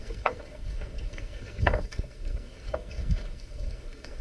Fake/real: fake